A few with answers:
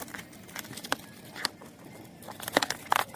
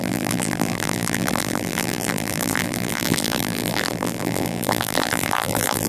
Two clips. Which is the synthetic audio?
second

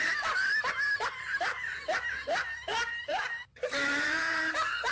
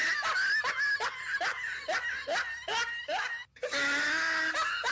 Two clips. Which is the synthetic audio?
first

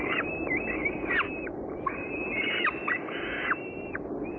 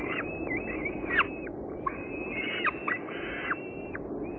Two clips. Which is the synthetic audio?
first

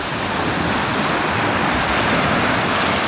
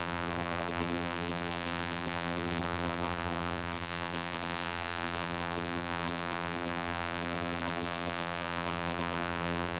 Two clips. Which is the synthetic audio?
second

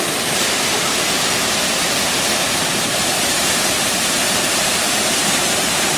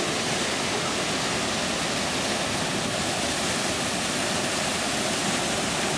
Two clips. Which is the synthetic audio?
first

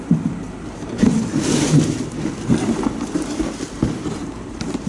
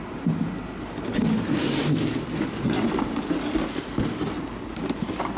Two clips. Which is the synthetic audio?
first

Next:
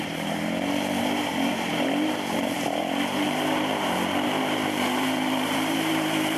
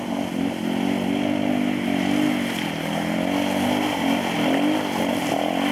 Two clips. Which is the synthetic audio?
first